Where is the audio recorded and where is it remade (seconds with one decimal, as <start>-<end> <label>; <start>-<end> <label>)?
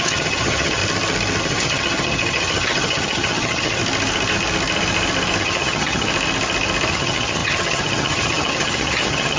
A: 0.0-0.8 remade; 0.8-1.4 recorded; 1.4-3.8 remade; 3.8-5.4 recorded; 5.4-6.1 remade; 6.1-6.9 recorded; 6.9-9.4 remade